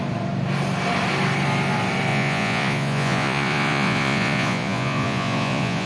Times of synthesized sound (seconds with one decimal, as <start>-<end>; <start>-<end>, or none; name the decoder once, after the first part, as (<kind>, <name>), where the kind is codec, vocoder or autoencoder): 2.1-5.9 (vocoder, Vocos)

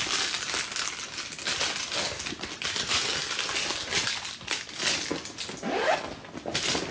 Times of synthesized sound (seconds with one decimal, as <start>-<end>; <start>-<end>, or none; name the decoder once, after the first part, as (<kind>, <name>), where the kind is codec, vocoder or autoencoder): none

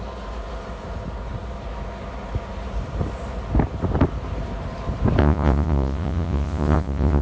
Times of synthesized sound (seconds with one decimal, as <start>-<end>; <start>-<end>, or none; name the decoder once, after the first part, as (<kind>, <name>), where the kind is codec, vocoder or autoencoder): 5.2-7.2 (vocoder, Vocos)

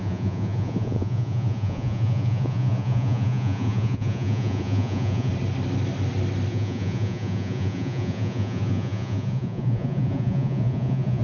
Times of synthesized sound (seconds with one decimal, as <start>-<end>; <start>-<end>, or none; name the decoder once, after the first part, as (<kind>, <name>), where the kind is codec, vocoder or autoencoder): 0.0-5.3 (vocoder, Vocos); 6.5-11.2

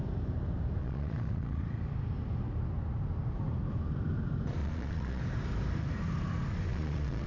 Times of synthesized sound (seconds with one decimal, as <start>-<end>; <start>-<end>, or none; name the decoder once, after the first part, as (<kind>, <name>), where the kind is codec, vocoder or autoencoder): 0.8-1.6 (vocoder, Vocos); 4.6-5.2; 6.7-7.3

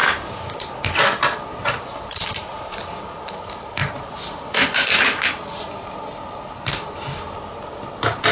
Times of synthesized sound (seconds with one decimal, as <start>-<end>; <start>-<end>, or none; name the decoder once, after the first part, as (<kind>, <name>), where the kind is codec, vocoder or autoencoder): none

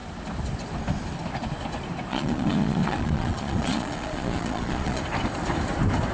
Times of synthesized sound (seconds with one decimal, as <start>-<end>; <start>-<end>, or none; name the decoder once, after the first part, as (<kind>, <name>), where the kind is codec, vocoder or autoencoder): 2.1-5.0 (vocoder, Vocos)

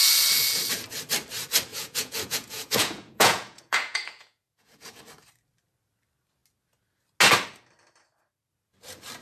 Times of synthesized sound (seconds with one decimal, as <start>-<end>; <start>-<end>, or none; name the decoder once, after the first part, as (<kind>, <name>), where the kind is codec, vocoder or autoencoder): 1.7-5.0 (vocoder, Vocos)